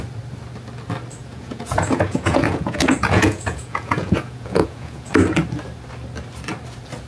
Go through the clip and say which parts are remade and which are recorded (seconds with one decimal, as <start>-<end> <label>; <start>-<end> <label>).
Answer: 0.0-1.2 recorded; 1.2-5.1 remade; 5.1-7.1 recorded